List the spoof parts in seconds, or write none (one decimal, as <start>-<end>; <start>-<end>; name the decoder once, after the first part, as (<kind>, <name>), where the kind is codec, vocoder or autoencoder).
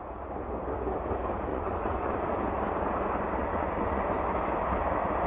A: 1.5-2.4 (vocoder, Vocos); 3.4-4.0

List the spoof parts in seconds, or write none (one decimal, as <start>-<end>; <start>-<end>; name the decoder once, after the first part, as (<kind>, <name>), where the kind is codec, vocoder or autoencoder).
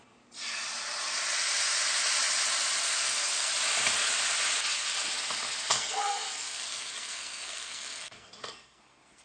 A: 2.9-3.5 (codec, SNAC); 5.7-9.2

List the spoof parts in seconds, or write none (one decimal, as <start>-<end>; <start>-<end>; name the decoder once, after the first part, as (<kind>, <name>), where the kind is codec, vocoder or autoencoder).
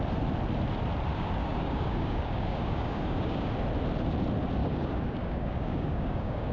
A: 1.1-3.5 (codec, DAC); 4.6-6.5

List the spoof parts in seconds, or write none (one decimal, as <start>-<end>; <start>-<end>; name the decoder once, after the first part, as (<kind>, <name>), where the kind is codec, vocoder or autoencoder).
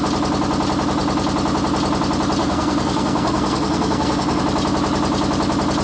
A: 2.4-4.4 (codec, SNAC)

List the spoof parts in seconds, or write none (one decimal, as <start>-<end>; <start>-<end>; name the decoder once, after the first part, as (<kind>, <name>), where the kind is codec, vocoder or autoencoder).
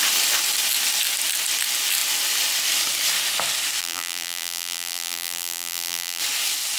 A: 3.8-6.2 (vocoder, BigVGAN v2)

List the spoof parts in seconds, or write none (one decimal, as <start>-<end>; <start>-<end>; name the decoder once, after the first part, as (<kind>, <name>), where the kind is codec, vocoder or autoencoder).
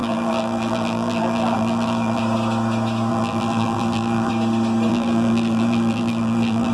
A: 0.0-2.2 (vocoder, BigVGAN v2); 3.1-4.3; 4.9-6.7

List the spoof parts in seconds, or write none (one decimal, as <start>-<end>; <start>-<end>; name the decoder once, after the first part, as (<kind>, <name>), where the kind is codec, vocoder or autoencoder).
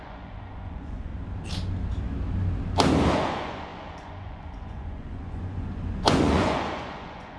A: 0.0-1.1 (vocoder, Vocos); 3.1-7.4